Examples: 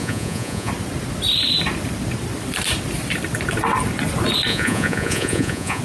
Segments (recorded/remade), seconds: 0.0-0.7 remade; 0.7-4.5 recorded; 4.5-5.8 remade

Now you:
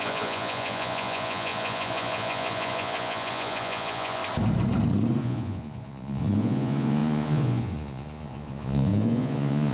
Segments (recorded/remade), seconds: 0.0-4.2 remade; 4.2-5.2 recorded; 5.2-9.7 remade

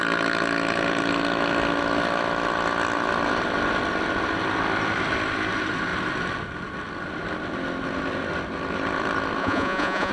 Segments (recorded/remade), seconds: 0.0-9.4 recorded; 9.4-10.1 remade

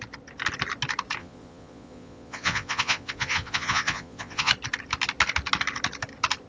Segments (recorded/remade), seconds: 0.0-1.2 recorded; 1.2-4.5 remade; 4.5-6.5 recorded

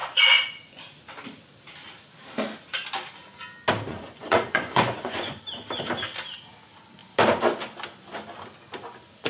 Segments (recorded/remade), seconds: 0.0-0.8 remade; 0.8-3.9 recorded; 3.9-5.4 remade; 5.4-9.3 recorded